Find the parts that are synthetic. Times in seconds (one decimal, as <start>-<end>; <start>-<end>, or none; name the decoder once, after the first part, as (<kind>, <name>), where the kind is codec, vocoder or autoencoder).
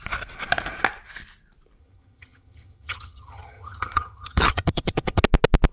1.8-5.2 (vocoder, HiFi-GAN)